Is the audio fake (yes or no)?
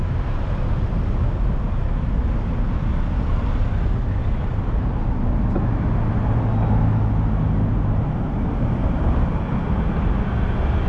no